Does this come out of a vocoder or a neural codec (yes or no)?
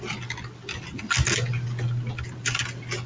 no